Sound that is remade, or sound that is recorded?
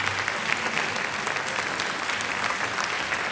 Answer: recorded